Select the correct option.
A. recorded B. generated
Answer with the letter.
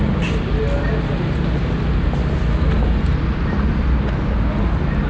A